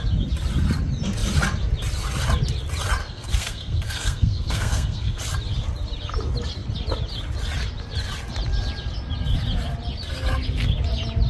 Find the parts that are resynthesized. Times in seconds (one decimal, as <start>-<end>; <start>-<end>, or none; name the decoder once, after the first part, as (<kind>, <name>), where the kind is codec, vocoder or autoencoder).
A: 3.0-5.2 (codec, SNAC)